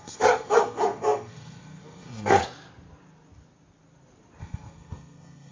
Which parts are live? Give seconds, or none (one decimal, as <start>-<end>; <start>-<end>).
2.4-4.4